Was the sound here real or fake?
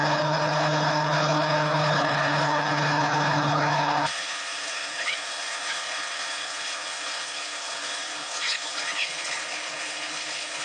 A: fake